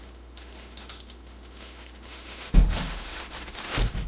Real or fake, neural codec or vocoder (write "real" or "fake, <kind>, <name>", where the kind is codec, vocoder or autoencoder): fake, autoencoder, DAC-VAE